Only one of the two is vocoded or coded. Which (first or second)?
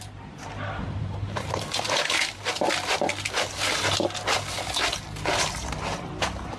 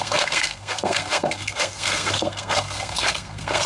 second